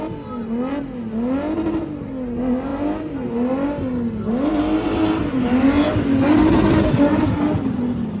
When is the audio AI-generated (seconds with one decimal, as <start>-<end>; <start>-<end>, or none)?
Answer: none